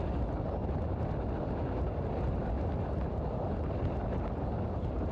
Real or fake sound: real